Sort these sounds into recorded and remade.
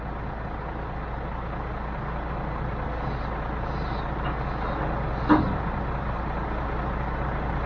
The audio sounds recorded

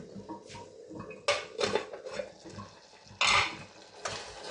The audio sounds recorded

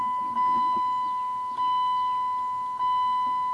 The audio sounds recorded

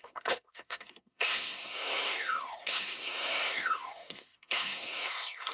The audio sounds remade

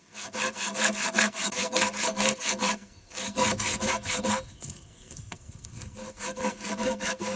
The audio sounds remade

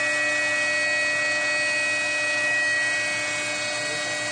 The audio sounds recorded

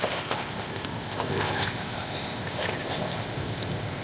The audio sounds remade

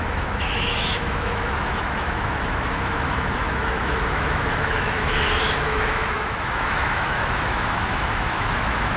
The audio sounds remade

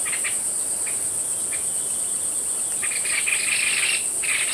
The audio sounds recorded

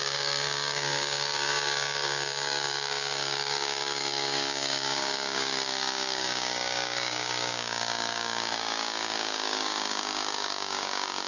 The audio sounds remade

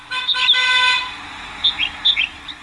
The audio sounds recorded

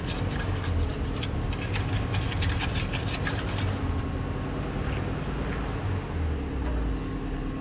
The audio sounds recorded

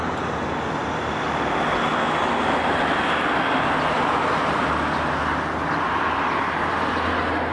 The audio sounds recorded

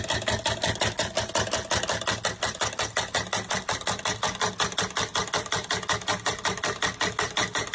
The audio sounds recorded